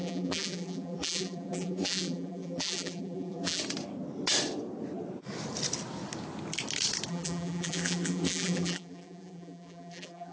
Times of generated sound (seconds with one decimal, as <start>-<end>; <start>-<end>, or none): 0.0-3.6; 7.1-10.3

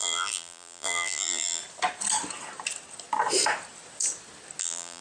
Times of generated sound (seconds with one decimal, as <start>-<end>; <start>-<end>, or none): 0.0-1.6; 4.6-5.0

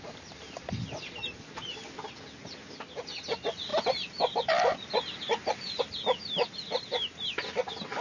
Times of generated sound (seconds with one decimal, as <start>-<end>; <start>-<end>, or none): none